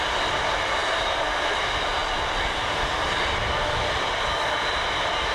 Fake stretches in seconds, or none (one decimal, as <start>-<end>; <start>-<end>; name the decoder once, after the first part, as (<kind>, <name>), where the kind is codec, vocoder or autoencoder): none